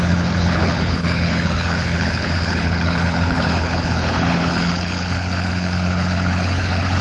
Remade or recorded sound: remade